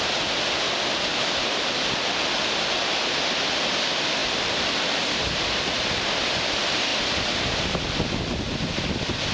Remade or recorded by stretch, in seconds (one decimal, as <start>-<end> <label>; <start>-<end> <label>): 0.0-4.2 recorded; 4.2-6.5 remade; 6.5-6.9 recorded; 6.9-8.2 remade; 8.2-9.3 recorded